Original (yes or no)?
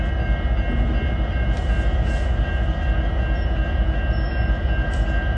yes